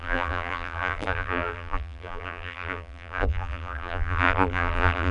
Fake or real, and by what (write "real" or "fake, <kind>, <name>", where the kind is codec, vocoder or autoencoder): fake, vocoder, BigVGAN v2